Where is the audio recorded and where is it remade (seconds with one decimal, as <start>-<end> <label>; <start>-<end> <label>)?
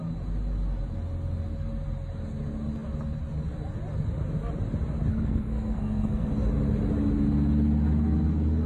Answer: 0.0-5.1 recorded; 5.1-6.3 remade; 6.3-8.7 recorded